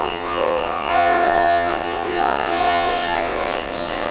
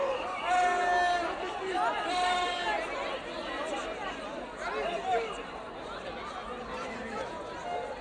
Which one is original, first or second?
second